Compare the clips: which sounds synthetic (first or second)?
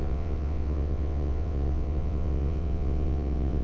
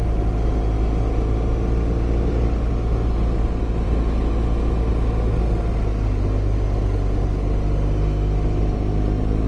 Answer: first